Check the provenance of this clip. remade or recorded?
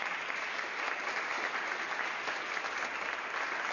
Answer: recorded